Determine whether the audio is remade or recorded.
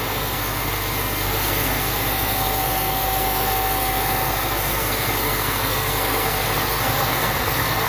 remade